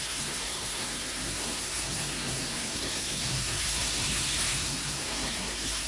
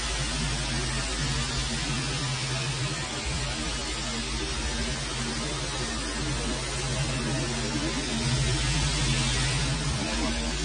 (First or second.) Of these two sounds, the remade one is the first